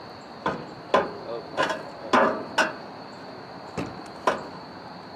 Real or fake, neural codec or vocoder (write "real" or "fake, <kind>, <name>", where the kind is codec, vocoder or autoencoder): real